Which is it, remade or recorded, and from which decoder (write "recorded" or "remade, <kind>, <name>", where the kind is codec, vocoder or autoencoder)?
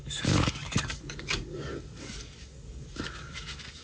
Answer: remade, codec, DAC